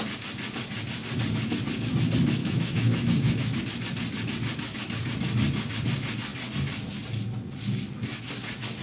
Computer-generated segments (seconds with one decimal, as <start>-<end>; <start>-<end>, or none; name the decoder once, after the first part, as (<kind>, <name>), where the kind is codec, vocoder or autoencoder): 2.4-3.6 (autoencoder, DAC-VAE)